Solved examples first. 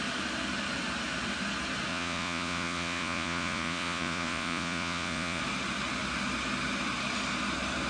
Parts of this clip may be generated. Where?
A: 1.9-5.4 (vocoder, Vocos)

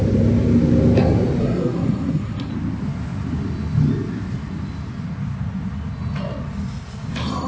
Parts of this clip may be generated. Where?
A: 1.4-2.5 (codec, SNAC)

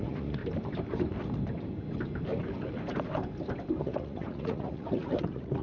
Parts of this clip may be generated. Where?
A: 0.0-0.4 (vocoder, Vocos); 3.8-5.6

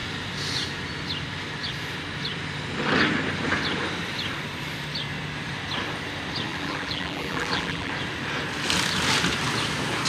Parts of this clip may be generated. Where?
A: 6.5-7.9 (vocoder, BigVGAN v2)

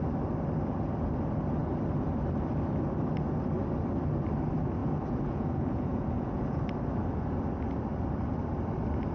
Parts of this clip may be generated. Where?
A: 4.8-6.6 (vocoder, Vocos)